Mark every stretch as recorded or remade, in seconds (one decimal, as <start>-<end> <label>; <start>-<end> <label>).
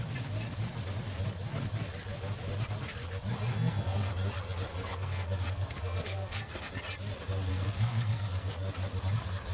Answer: 0.0-3.5 recorded; 3.5-4.1 remade; 4.1-4.7 recorded; 4.7-6.7 remade; 6.7-7.5 recorded; 7.5-8.5 remade; 8.5-9.5 recorded